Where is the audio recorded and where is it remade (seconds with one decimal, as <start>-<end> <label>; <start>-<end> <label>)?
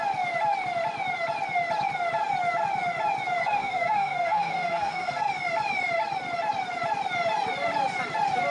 0.0-3.4 recorded; 3.4-5.3 remade; 5.3-8.5 recorded